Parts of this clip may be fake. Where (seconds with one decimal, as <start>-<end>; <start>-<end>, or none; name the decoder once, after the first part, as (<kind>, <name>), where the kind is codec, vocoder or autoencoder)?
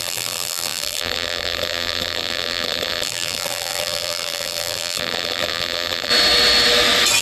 0.0-6.1 (vocoder, BigVGAN v2)